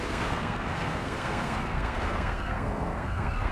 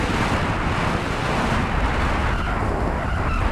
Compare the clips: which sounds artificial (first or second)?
first